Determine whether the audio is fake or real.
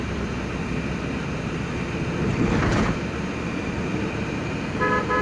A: fake